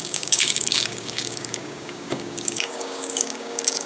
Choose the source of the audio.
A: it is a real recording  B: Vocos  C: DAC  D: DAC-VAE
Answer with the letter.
C